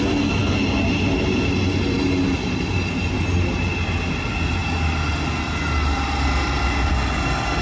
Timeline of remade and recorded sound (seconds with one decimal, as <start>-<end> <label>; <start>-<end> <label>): 0.0-7.6 recorded